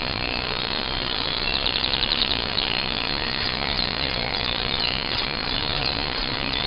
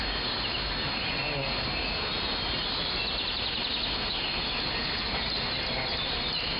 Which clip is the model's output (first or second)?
first